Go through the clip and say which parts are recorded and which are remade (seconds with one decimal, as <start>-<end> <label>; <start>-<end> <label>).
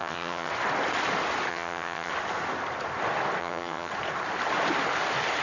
0.0-0.5 remade; 0.5-1.5 recorded; 1.5-2.1 remade; 2.1-3.4 recorded; 3.4-3.9 remade; 3.9-5.4 recorded